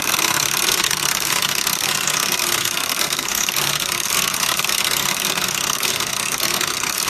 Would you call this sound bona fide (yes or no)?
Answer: no